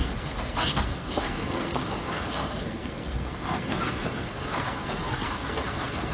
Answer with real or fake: fake